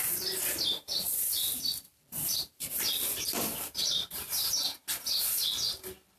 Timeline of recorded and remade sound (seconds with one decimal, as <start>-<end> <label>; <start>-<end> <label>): 0.0-6.2 recorded